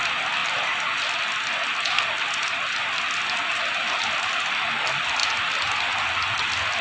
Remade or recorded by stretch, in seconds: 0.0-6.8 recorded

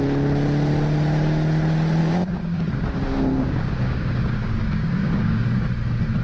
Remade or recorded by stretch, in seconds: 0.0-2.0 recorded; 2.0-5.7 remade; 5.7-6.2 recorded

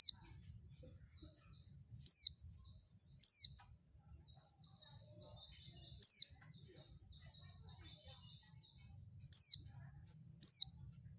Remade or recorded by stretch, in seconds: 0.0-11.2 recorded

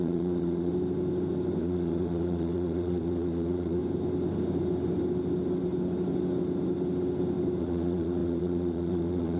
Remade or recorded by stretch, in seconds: 0.0-0.7 remade; 0.7-1.6 recorded; 1.6-3.8 remade; 3.8-7.6 recorded; 7.6-9.4 remade